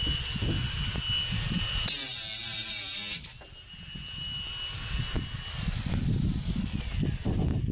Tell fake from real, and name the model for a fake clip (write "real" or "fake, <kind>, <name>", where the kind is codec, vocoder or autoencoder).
real